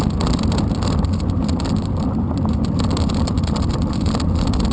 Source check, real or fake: fake